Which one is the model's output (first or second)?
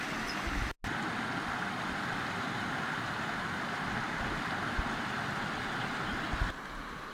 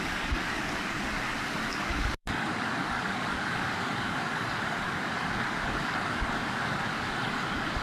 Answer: second